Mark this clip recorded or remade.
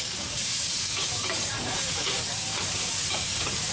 remade